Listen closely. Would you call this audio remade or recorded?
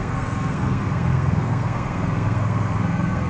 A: remade